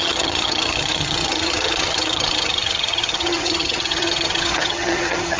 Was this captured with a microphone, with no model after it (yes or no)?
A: no